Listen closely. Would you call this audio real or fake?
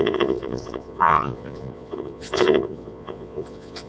fake